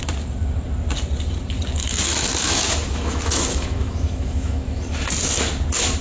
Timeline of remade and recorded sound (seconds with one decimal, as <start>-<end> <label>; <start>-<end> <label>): 0.0-1.8 recorded; 1.8-4.8 remade; 4.8-6.0 recorded